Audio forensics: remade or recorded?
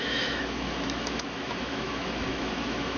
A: remade